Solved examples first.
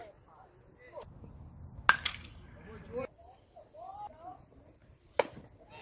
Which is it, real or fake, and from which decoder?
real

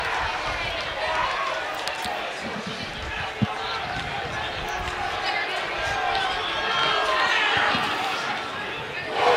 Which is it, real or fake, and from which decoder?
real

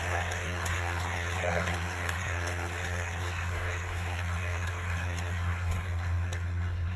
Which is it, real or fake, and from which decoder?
fake, codec, SNAC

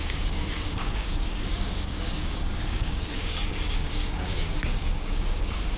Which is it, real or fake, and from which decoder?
fake, codec, DAC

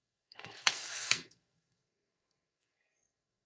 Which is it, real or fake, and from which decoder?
fake, codec, SNAC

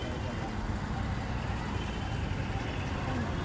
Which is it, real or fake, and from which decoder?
real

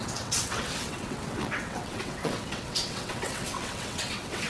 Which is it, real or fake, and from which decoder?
fake, vocoder, WaveNeXt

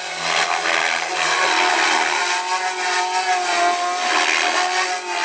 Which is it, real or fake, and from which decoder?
real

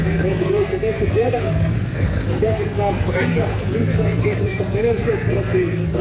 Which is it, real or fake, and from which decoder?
fake, codec, SNAC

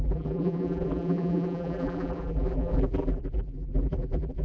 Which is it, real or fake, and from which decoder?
fake, vocoder, BigVGAN v2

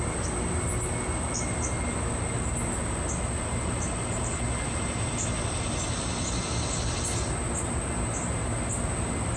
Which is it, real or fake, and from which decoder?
real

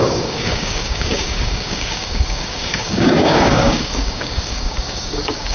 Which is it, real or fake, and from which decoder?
fake, codec, DAC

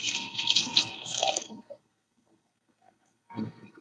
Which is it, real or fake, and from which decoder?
fake, codec, SNAC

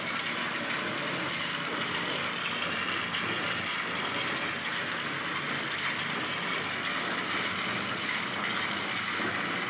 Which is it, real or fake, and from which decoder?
real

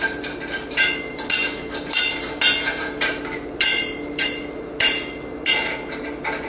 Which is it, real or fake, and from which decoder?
fake, vocoder, BigVGAN v2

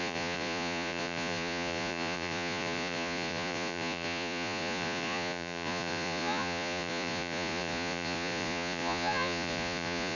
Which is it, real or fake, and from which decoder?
fake, vocoder, Vocos